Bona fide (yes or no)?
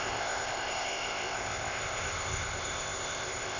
no